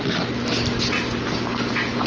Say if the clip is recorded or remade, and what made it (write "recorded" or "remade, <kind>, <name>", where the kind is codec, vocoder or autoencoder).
recorded